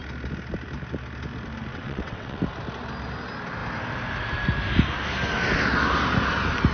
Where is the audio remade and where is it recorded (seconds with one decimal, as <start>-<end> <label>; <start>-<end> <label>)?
0.0-1.7 recorded; 1.7-2.4 remade; 2.4-6.7 recorded